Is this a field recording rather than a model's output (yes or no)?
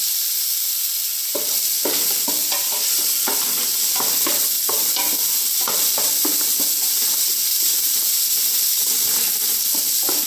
yes